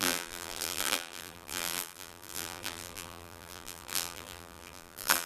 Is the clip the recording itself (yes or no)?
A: no